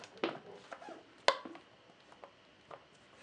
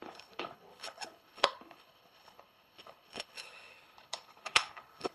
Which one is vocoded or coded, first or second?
second